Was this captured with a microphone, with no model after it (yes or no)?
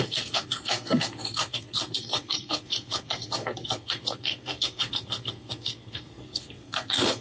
no